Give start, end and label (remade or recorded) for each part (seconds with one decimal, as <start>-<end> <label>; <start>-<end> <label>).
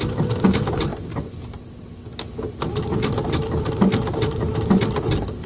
0.0-5.5 recorded